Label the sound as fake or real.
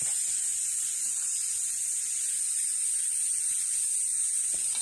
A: real